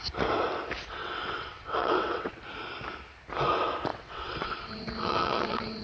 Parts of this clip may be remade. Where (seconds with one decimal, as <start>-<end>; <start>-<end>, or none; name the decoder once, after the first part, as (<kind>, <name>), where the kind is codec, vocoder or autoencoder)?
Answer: 1.0-2.4 (vocoder, WaveNeXt); 3.9-5.8